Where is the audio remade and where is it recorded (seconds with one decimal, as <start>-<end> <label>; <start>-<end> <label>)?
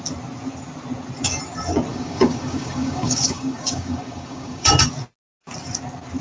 0.0-1.9 recorded; 1.9-4.7 remade; 4.7-6.2 recorded